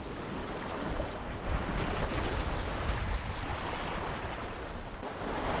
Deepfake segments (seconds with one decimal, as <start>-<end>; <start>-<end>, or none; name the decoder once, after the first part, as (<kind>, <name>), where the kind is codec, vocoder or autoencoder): 0.4-3.0 (vocoder, BigVGAN v2); 3.5-4.6